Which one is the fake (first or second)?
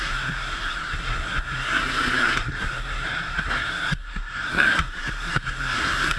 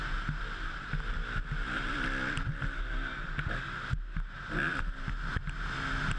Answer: first